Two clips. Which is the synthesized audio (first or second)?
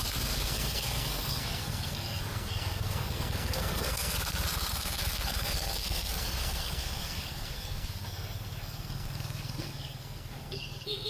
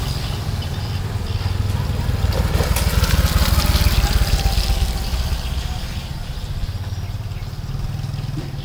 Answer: first